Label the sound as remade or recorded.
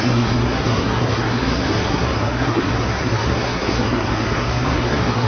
remade